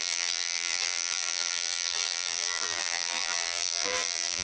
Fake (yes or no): yes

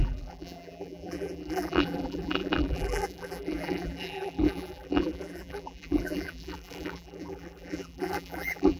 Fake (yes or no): yes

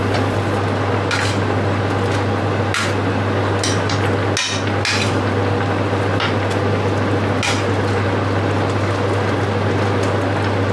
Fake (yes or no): no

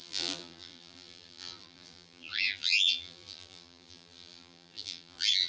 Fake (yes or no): yes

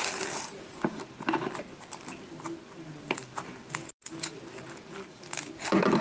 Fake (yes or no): no